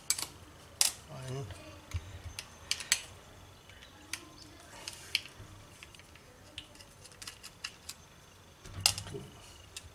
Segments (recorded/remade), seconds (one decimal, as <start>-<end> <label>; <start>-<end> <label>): 0.0-9.9 recorded